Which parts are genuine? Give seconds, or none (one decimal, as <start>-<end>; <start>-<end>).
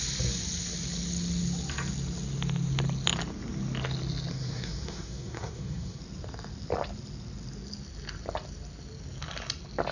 0.0-4.3; 6.0-9.9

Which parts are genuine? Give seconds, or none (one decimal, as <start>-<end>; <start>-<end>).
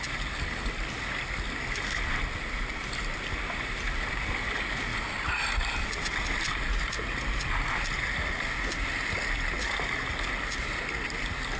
0.0-11.6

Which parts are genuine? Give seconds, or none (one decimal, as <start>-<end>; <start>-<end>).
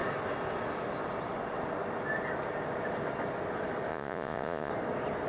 0.0-3.9; 4.7-5.3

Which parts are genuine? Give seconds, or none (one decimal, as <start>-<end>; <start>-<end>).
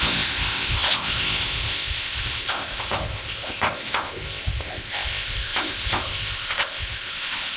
none